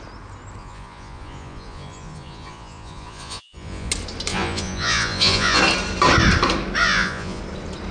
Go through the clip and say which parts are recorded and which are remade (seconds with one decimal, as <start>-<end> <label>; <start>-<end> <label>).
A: 0.0-0.6 recorded; 0.6-3.9 remade; 3.9-4.3 recorded; 4.3-5.6 remade; 5.6-6.8 recorded; 6.8-7.4 remade; 7.4-7.9 recorded